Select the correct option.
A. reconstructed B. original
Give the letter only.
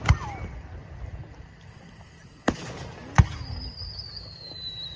B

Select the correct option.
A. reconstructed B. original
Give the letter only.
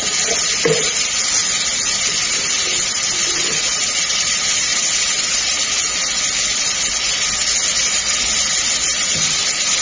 B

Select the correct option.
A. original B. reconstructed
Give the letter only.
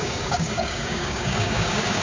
B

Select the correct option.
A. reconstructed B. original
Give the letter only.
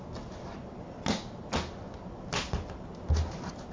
B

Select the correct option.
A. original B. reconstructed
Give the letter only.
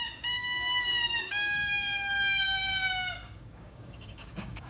B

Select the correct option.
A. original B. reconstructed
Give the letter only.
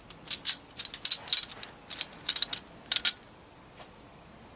A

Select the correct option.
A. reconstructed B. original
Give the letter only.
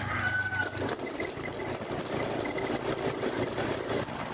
B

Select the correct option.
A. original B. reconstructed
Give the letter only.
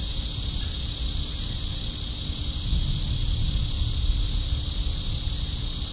A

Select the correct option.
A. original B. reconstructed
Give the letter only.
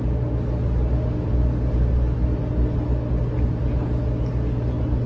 A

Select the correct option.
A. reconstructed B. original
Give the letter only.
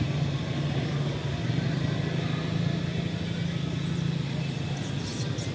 B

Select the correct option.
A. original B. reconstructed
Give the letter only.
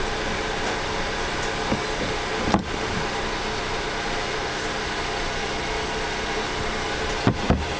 A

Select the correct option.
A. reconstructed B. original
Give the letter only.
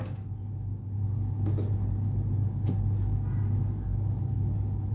B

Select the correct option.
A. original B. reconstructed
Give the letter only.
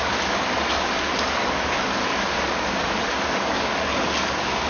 B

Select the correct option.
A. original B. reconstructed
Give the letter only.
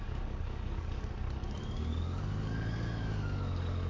B